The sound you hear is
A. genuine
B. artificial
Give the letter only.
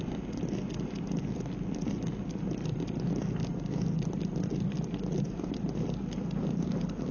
A